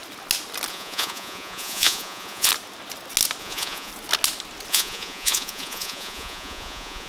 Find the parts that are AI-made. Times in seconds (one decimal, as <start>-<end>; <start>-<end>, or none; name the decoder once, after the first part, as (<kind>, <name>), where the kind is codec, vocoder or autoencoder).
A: 0.7-2.5 (vocoder, Vocos); 3.4-3.9; 4.7-7.1